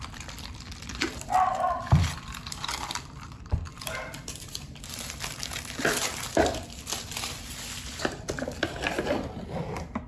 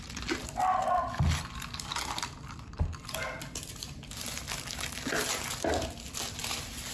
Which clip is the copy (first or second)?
first